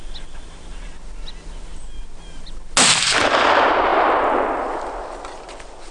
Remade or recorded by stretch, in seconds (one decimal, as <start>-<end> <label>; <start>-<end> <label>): 0.0-5.9 recorded